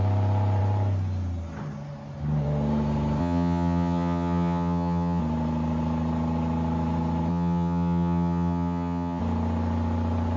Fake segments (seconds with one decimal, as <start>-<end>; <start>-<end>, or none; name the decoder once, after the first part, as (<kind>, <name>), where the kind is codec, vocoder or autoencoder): 3.2-5.2 (vocoder, HiFi-GAN); 7.3-9.2

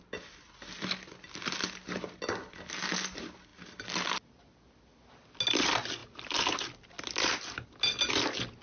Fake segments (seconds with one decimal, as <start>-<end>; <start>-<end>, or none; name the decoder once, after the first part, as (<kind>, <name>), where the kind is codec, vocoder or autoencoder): none

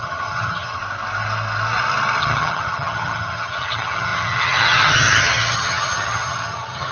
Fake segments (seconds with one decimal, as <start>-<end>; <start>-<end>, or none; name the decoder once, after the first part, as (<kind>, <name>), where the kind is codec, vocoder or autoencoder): 0.0-0.8 (vocoder, HiFi-GAN); 2.2-6.9

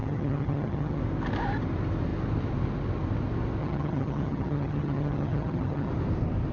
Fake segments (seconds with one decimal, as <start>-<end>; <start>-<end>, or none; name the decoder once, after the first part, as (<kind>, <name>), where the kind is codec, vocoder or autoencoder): 0.0-1.0 (vocoder, HiFi-GAN); 3.6-5.9